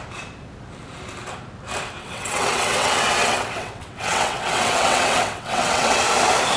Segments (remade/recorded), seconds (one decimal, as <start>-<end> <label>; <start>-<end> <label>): 0.0-2.0 recorded; 2.0-6.0 remade; 6.0-6.6 recorded